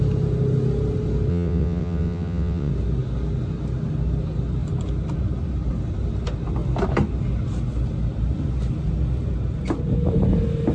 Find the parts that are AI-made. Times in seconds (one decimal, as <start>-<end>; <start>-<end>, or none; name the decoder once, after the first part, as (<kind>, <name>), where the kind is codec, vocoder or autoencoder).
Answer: 1.3-2.7 (vocoder, WaveNeXt)